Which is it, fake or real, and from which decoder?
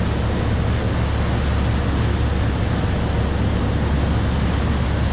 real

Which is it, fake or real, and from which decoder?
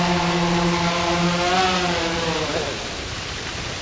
fake, vocoder, BigVGAN v2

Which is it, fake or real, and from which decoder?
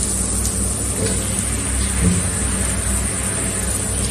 real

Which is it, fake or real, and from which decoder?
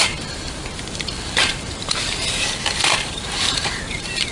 fake, vocoder, BigVGAN v2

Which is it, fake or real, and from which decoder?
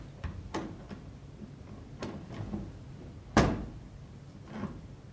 real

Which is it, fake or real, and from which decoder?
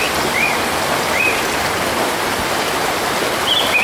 real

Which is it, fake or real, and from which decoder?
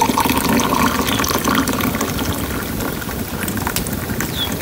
real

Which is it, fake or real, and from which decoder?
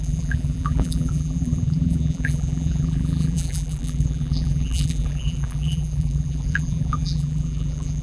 fake, vocoder, BigVGAN v2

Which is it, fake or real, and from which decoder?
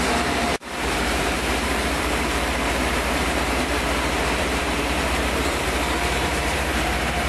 fake, vocoder, BigVGAN v2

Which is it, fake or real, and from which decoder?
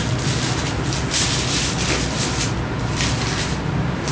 real